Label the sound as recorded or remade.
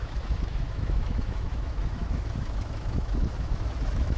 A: remade